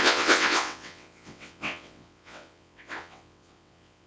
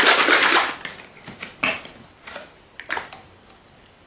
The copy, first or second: first